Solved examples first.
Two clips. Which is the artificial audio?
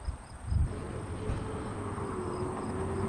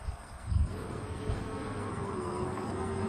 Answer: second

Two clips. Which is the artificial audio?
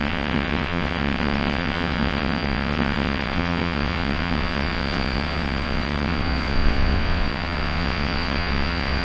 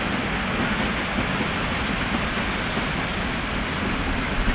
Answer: first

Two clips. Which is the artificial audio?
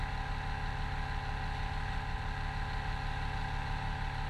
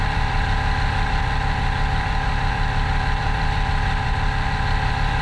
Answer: second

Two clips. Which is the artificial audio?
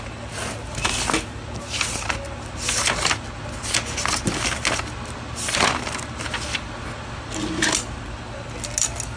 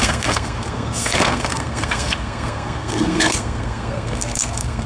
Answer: second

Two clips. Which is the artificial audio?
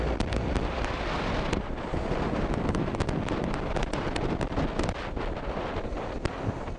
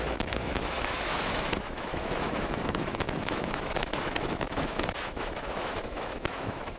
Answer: second